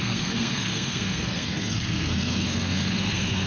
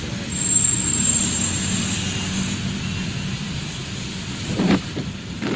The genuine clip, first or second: second